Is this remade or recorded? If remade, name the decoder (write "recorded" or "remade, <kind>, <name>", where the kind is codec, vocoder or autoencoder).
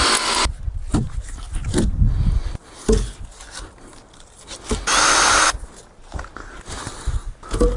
recorded